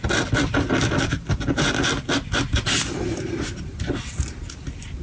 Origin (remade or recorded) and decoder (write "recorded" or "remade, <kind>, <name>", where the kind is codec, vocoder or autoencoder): recorded